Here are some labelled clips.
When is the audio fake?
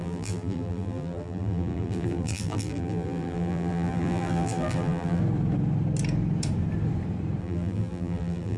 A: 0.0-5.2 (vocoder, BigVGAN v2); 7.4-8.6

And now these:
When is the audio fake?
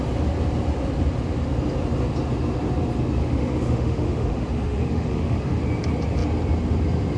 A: 3.2-5.6 (autoencoder, DAC-VAE)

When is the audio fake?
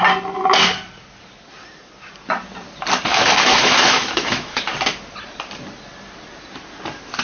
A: 3.1-4.6 (autoencoder, DAC-VAE)